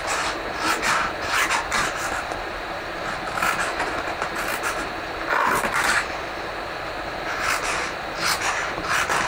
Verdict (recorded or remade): recorded